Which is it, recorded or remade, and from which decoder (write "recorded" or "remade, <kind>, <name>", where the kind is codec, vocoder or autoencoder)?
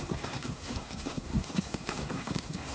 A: remade, codec, SNAC